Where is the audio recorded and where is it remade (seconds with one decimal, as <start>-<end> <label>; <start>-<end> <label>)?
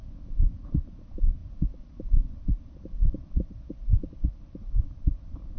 0.0-5.6 recorded